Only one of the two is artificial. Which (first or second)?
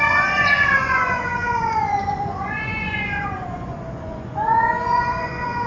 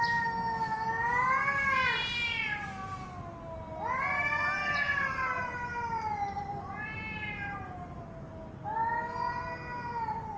first